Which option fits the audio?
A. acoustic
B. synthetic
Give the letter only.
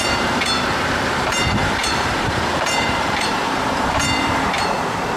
B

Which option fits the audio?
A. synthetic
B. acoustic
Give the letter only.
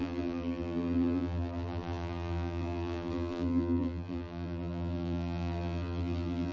A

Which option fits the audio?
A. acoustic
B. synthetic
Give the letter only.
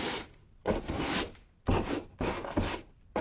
A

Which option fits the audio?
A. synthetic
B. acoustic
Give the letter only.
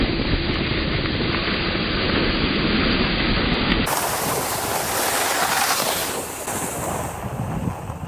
B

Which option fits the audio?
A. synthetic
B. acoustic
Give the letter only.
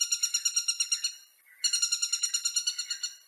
B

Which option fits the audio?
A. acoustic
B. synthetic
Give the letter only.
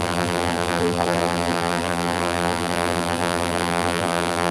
B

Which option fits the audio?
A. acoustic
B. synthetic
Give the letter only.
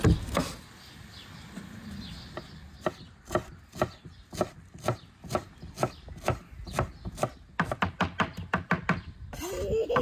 A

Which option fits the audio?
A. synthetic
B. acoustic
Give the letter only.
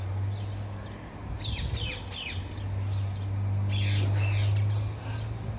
B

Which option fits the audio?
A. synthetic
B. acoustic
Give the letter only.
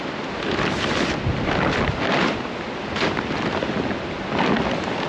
B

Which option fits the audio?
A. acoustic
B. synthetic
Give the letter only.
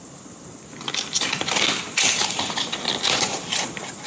B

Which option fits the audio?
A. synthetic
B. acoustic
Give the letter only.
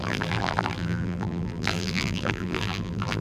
A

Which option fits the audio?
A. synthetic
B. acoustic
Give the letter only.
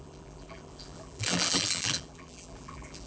A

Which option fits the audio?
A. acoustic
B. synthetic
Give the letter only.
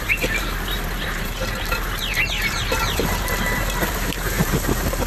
B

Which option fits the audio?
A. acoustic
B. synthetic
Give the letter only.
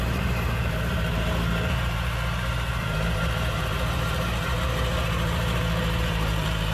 B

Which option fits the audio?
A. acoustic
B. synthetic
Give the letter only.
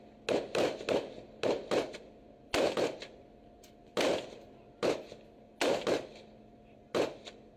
A